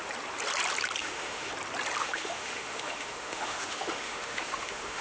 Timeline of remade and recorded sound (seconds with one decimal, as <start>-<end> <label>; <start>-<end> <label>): 0.0-1.0 recorded; 1.0-1.5 remade; 1.5-2.0 recorded; 2.0-5.0 remade